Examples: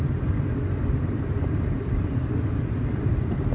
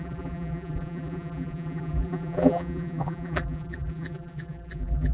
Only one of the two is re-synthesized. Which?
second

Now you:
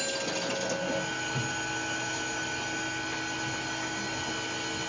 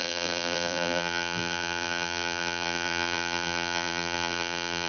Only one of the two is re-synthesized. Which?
second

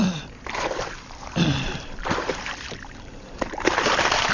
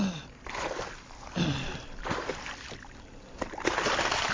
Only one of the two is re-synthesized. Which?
first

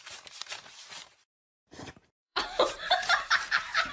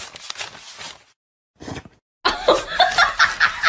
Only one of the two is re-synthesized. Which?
first